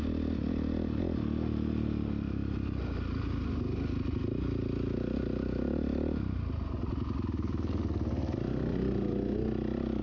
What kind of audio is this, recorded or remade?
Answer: recorded